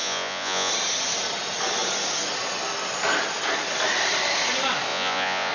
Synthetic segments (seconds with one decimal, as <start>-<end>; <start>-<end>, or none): 0.0-0.7; 4.9-5.5